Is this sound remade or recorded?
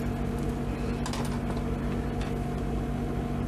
recorded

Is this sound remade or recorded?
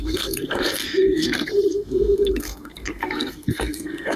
remade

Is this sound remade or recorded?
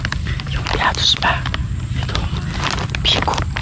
recorded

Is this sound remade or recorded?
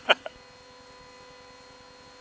recorded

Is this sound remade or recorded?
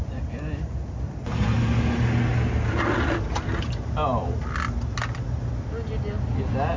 recorded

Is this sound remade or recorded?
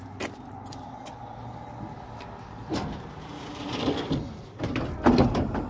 recorded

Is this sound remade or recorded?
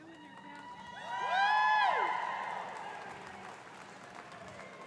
recorded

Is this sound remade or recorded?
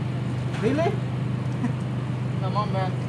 recorded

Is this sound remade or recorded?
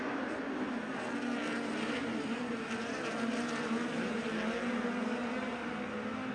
recorded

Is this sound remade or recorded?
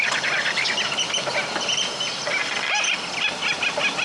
recorded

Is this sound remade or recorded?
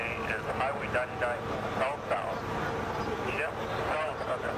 recorded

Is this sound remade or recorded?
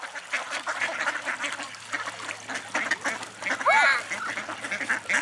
recorded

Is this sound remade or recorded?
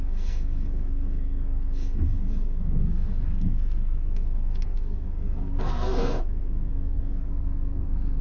remade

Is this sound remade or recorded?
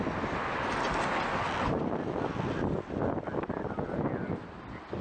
recorded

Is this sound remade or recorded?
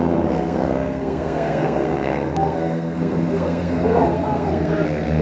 remade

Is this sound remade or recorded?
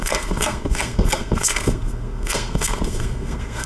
remade